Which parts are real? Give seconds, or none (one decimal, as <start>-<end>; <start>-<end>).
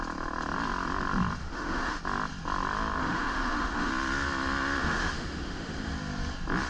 0.0-1.4; 2.0-3.0; 3.9-4.8; 5.9-6.7